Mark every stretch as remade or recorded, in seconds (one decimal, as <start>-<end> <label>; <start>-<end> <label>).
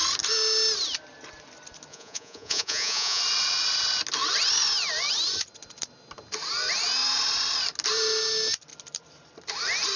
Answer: 0.0-1.9 recorded; 1.9-3.2 remade; 3.2-10.0 recorded